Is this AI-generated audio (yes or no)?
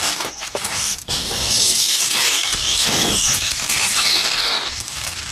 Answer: yes